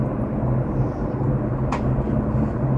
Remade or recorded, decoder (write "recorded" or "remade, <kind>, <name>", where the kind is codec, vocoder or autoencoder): recorded